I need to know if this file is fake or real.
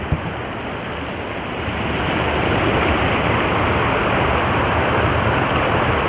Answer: real